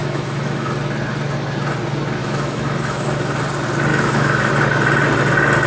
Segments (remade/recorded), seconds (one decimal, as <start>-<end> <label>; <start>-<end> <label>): 0.0-0.7 remade; 0.7-2.2 recorded; 2.2-3.4 remade; 3.4-3.9 recorded; 3.9-4.5 remade; 4.5-5.7 recorded